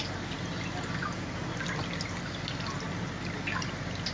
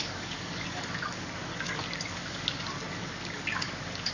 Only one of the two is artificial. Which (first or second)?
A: second